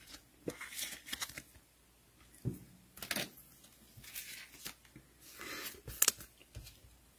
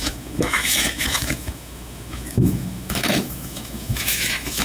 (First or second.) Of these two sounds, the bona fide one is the first